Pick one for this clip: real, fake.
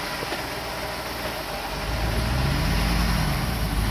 real